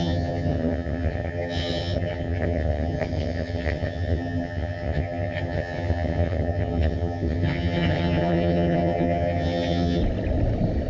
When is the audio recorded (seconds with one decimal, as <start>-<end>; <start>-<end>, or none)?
10.0-10.9